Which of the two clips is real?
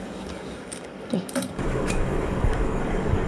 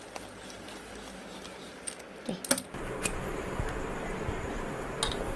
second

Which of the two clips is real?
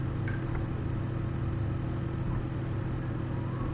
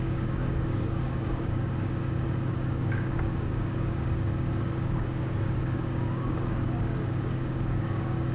first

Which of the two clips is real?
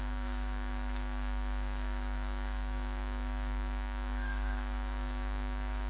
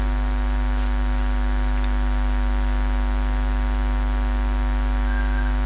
second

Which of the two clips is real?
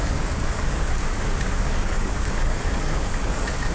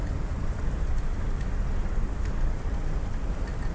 second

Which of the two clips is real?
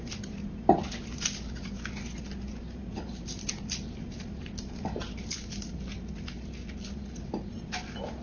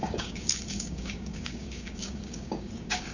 first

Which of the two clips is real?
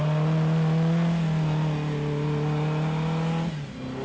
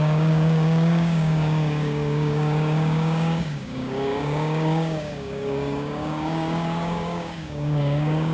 first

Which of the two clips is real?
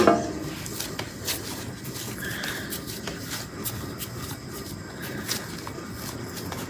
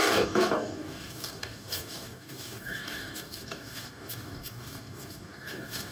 first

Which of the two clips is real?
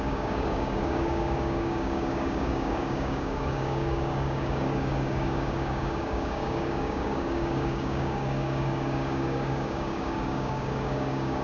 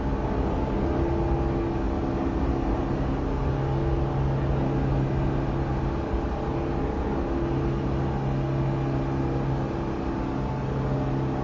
second